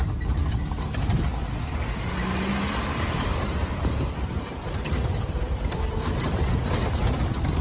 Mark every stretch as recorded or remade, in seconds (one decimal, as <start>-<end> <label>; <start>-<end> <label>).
0.0-2.5 recorded; 2.5-7.1 remade; 7.1-7.6 recorded